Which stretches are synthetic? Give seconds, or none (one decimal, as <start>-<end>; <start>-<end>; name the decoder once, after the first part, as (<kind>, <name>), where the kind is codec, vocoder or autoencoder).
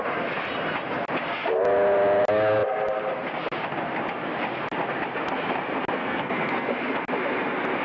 6.0-6.7 (codec, SNAC)